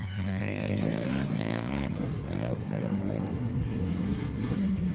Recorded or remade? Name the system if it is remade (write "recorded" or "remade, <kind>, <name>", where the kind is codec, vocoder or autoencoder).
remade, codec, SNAC